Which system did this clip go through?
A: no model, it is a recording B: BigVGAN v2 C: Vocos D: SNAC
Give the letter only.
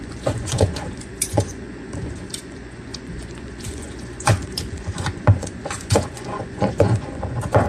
C